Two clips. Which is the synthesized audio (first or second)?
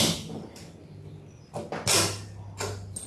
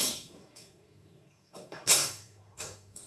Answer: second